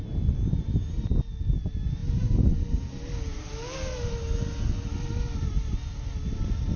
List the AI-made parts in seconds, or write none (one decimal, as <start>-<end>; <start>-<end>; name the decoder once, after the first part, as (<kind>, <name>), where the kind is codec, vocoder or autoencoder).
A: none